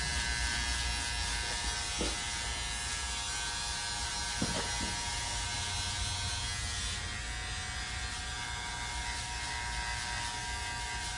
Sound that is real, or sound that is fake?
real